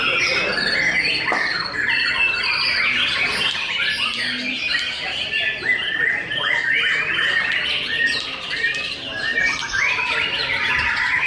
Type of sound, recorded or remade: recorded